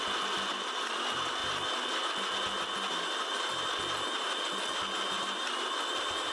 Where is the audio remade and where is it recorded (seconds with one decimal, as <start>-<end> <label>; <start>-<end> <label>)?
0.0-6.3 recorded